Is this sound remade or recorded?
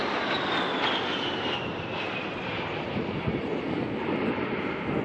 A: recorded